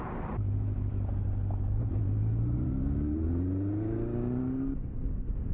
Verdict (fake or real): real